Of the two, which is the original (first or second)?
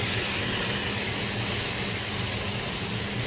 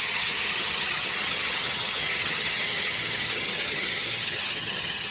first